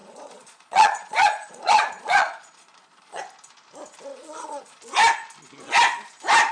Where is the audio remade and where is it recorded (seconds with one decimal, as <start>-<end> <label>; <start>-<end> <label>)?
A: 0.0-3.2 remade; 3.2-4.1 recorded; 4.1-4.8 remade; 4.8-6.5 recorded